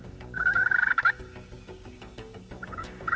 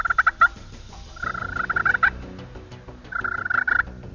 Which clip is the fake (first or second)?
first